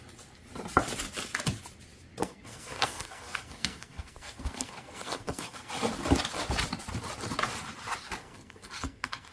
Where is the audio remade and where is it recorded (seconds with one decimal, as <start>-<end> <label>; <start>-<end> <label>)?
0.0-2.2 recorded; 2.2-5.7 remade; 5.7-8.2 recorded; 8.2-9.3 remade